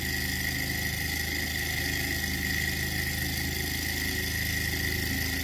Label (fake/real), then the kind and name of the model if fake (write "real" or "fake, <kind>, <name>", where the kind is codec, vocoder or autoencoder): real